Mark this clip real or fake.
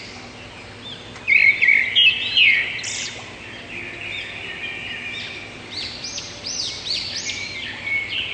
real